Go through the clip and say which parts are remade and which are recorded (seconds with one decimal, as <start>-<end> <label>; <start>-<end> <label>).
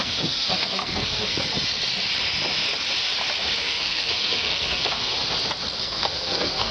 0.0-1.5 remade; 1.5-3.6 recorded; 3.6-5.1 remade; 5.1-5.8 recorded; 5.8-6.7 remade